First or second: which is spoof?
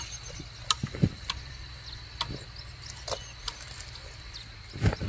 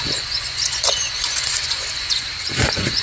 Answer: second